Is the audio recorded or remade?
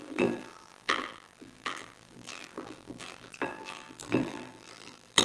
remade